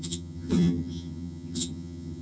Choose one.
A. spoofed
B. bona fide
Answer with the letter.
A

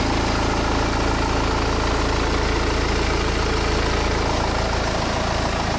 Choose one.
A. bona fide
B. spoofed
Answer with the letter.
A